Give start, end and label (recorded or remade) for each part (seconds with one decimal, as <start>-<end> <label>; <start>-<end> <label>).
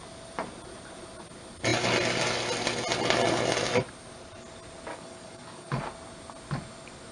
0.0-4.9 recorded; 4.9-5.8 remade; 5.8-7.1 recorded